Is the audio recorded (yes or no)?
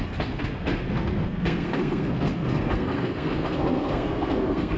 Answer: no